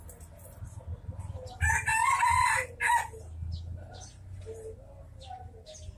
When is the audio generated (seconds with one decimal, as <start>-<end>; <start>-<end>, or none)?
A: none

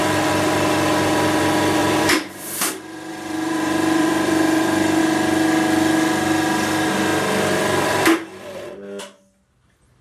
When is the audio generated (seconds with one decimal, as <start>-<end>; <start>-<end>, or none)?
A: 1.8-5.0; 7.1-9.0

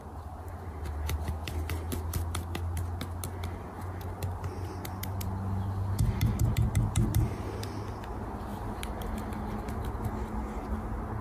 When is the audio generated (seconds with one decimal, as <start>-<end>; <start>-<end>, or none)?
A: 8.5-9.2

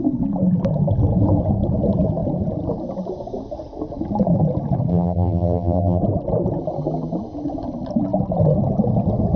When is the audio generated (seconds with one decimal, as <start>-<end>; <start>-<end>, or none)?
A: 4.9-6.0

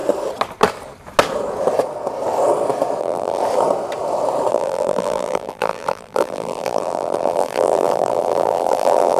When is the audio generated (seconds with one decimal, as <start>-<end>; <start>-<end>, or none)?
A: 3.0-3.4; 4.5-9.2

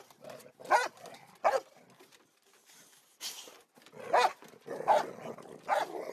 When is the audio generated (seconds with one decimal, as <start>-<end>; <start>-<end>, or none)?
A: none